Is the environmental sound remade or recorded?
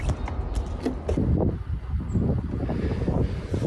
recorded